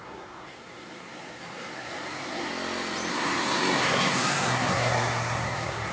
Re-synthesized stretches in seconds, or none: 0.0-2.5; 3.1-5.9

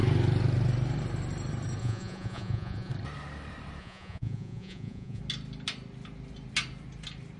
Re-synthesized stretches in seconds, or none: 1.8-2.9; 3.8-5.2

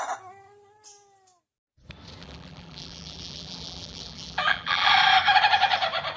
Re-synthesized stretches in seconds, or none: 2.2-4.9

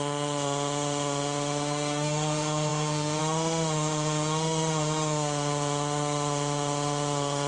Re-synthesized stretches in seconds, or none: 0.0-7.5

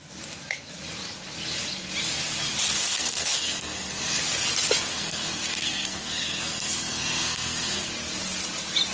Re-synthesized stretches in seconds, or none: 2.7-4.2; 4.9-7.9

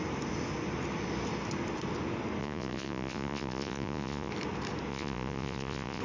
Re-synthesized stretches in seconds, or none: 2.4-4.3; 4.9-6.0

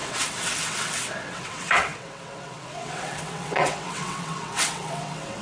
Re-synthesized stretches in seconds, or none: 0.0-5.4